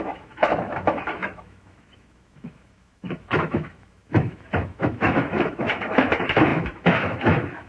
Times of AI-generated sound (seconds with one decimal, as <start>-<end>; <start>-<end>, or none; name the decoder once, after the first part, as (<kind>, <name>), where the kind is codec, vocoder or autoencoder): 0.0-7.7 (autoencoder, DAC-VAE)